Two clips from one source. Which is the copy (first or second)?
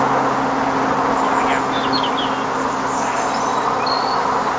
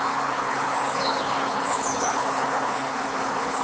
second